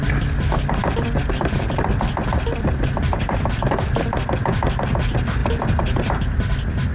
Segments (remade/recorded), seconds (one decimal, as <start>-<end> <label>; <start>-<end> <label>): 0.0-6.9 recorded